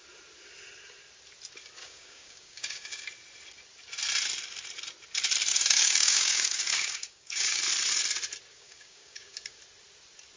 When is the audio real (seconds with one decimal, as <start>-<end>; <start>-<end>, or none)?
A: 0.0-1.8; 3.0-5.5; 7.6-8.5; 9.6-10.4